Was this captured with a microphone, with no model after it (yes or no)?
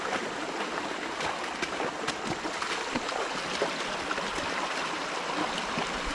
yes